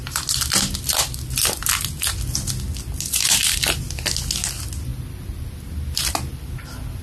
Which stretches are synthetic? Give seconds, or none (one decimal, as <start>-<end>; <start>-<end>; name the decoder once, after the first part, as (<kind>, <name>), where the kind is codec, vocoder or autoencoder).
none